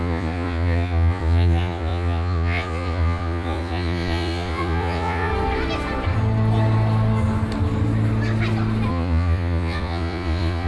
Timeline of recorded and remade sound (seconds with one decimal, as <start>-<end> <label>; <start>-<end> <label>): 0.0-5.3 remade; 5.3-8.9 recorded; 8.9-10.7 remade

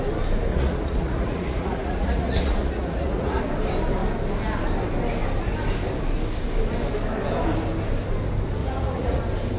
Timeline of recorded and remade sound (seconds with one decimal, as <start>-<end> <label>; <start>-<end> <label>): 0.0-0.5 recorded; 0.5-3.4 remade; 3.4-8.6 recorded; 8.6-9.2 remade; 9.2-9.6 recorded

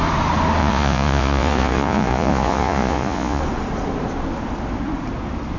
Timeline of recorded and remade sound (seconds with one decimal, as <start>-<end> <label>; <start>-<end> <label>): 0.0-0.6 recorded; 0.6-3.4 remade; 3.4-5.6 recorded

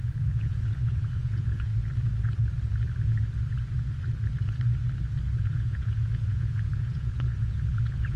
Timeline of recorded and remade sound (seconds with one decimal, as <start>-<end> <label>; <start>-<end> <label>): 0.0-1.7 remade; 1.7-5.4 recorded; 5.4-8.2 remade